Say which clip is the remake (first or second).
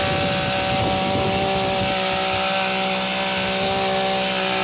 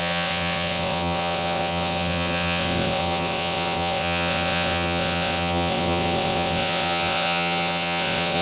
second